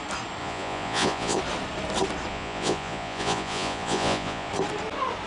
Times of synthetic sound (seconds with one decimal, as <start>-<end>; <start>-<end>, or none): 0.4-1.4; 2.3-4.5